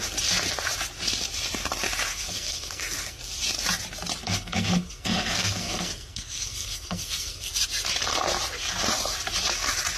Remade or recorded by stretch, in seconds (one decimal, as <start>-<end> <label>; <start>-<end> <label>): 0.0-2.1 recorded; 2.1-3.3 remade; 3.3-4.2 recorded; 4.2-7.5 remade; 7.5-10.0 recorded